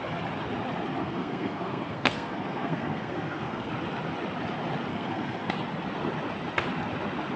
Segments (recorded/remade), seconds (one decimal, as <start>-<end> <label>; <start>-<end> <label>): 0.0-1.0 recorded; 1.0-3.7 remade; 3.7-4.9 recorded; 4.9-5.5 remade; 5.5-7.4 recorded